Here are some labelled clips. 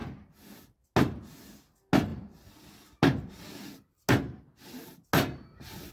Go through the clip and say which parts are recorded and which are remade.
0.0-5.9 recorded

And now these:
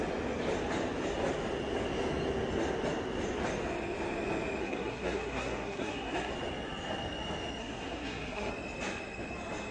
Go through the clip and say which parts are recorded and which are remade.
0.0-4.6 recorded; 4.6-6.3 remade; 6.3-7.6 recorded; 7.6-8.5 remade; 8.5-9.7 recorded

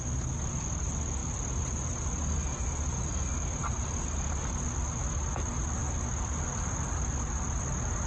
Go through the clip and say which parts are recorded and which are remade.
0.0-8.1 recorded

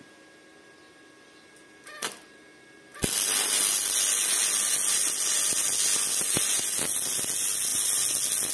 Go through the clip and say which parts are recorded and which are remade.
0.0-8.5 recorded

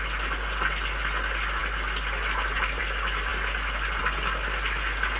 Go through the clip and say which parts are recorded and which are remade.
0.0-5.2 recorded

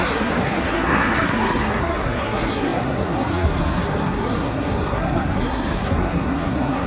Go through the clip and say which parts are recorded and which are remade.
0.0-6.9 remade